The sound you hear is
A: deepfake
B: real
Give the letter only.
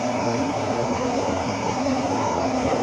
A